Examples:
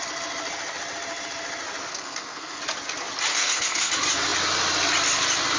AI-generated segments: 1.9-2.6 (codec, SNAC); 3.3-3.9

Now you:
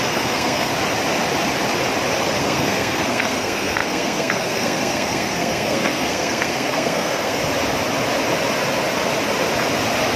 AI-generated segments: 0.0-0.7 (codec, SNAC); 2.4-7.4

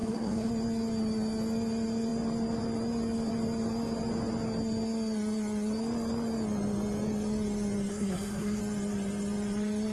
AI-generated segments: 0.0-0.5 (codec, SNAC); 7.9-8.6

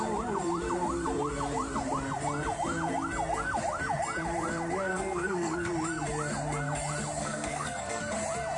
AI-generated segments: 4.9-5.7 (codec, SNAC); 7.2-8.0

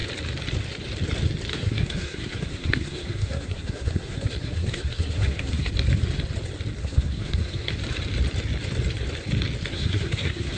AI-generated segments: 1.5-5.7 (codec, SNAC); 6.8-7.7; 9.7-10.6

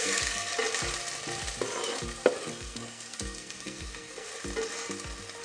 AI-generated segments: 0.0-0.5 (codec, SNAC); 2.5-4.3

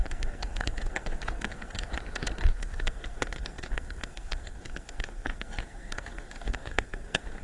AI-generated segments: 0.0-1.9 (codec, SNAC); 2.6-7.4